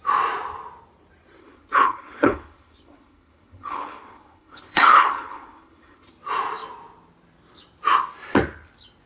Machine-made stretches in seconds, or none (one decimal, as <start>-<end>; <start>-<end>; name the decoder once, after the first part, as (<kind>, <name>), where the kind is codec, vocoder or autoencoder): 1.4-6.1 (codec, HILCodec)